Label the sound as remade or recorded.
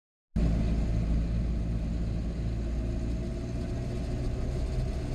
recorded